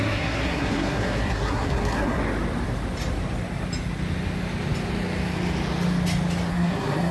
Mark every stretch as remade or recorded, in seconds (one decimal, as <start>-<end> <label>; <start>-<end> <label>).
0.0-2.2 remade; 2.2-6.5 recorded; 6.5-7.1 remade